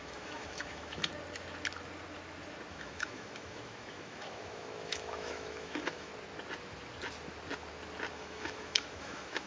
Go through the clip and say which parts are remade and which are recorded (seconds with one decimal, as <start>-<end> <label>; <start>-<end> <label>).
0.0-1.1 remade; 1.1-2.7 recorded; 2.7-6.1 remade; 6.1-8.1 recorded; 8.1-9.5 remade